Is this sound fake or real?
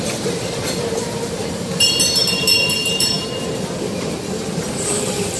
fake